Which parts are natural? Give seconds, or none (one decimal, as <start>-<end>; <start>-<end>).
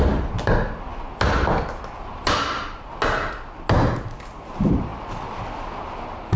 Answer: 0.0-6.4